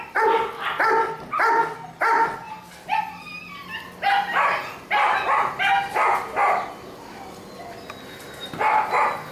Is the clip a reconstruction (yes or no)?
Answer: no